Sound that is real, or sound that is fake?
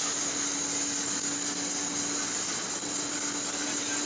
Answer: real